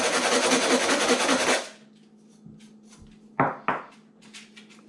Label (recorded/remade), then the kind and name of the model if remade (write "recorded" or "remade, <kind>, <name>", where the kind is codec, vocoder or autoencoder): recorded